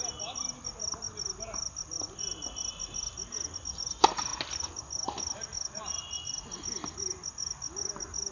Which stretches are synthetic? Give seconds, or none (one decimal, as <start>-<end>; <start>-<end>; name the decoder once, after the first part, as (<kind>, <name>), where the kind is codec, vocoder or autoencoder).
none